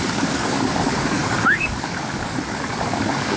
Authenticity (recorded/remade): remade